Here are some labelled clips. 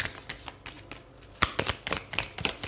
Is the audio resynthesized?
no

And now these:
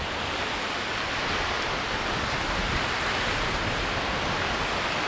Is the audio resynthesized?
no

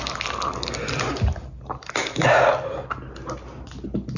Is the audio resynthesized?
no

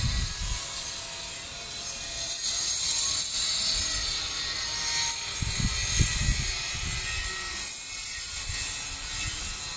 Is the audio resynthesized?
no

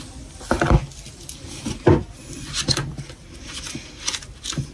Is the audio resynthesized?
no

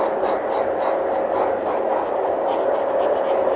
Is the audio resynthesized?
no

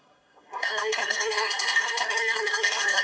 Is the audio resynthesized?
yes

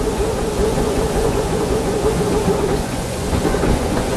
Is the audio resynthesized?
yes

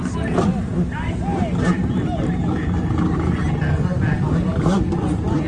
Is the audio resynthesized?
no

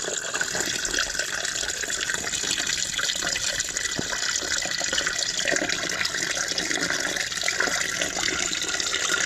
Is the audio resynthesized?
no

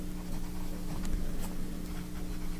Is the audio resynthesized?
no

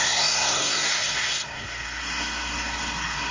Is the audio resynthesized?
yes